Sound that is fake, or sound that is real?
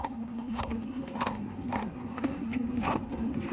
fake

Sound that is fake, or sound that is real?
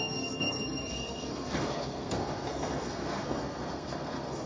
fake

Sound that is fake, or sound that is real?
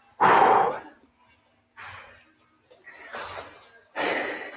real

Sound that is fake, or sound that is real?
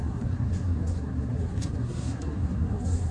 fake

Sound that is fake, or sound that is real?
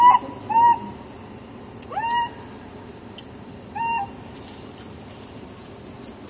real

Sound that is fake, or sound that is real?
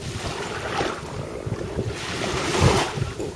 real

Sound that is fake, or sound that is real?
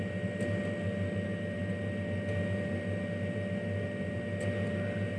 real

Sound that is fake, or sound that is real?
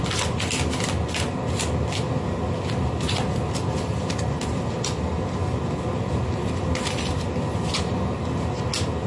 real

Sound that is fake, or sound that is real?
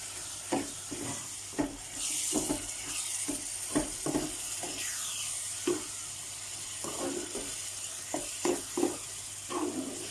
real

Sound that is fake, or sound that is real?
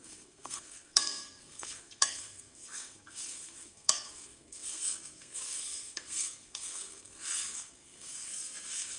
fake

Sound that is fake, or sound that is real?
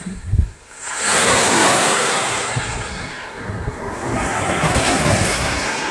fake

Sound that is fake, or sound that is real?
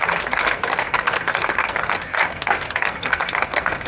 fake